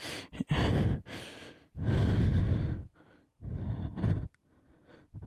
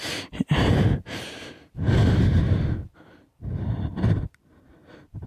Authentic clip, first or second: first